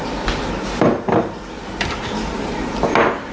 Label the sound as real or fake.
real